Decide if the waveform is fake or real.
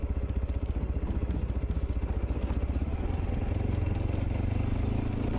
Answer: real